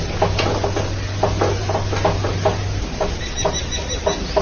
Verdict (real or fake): real